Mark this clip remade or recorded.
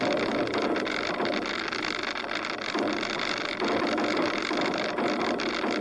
recorded